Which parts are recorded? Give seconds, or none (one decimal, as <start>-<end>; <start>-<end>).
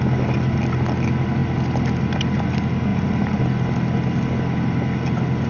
0.0-2.9; 3.4-5.5